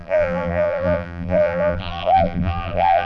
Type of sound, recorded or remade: remade